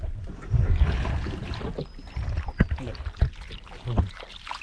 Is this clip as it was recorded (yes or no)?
yes